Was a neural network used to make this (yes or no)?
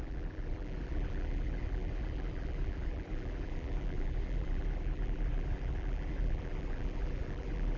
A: yes